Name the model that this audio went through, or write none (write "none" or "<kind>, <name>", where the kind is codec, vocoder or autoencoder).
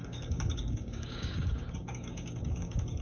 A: codec, DAC